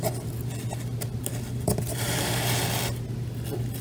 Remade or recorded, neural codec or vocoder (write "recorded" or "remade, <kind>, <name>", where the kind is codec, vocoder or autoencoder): recorded